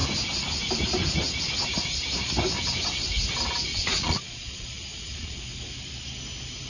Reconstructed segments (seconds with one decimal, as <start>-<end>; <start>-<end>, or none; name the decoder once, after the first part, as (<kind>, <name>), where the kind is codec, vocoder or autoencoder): 3.7-5.4 (vocoder, Vocos)